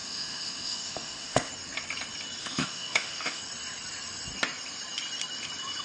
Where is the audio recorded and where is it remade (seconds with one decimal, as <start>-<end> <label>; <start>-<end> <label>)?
0.0-1.5 remade; 1.5-2.4 recorded; 2.4-3.4 remade; 3.4-5.8 recorded